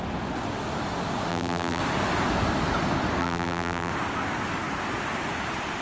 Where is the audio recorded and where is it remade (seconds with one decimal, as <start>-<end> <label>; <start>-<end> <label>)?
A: 0.0-1.3 recorded; 1.3-1.8 remade; 1.8-3.2 recorded; 3.2-3.9 remade; 3.9-5.8 recorded